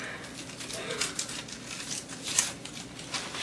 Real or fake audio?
real